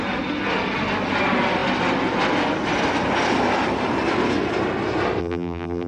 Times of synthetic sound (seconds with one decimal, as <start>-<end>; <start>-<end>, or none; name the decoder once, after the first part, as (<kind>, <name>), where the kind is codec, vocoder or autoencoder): 5.2-5.9 (vocoder, BigVGAN v2)